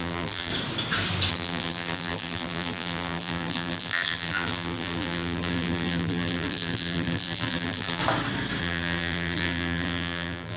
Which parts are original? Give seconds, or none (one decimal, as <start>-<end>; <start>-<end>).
0.5-1.3; 8.0-8.6